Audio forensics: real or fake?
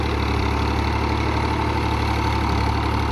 real